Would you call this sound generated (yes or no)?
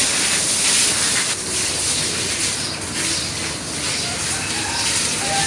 no